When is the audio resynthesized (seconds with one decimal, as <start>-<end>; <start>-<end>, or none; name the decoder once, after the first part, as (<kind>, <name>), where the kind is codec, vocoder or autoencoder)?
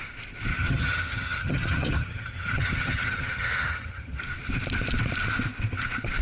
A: 0.5-4.2 (vocoder, HiFi-GAN)